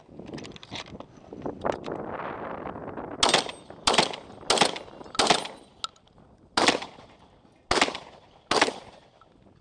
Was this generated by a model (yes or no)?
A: no